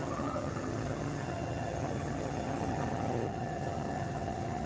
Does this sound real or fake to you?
fake